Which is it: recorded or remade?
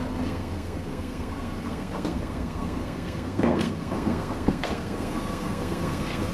remade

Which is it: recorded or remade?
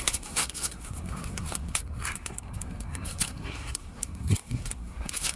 remade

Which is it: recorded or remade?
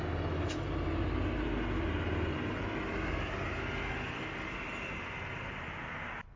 recorded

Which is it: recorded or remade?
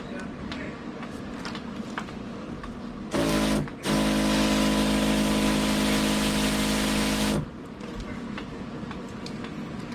recorded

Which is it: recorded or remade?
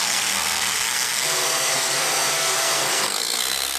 remade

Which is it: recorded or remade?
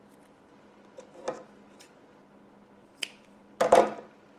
recorded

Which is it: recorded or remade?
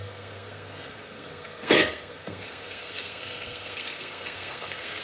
remade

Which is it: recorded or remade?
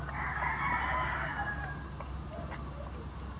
recorded